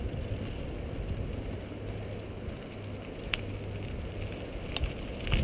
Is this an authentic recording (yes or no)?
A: yes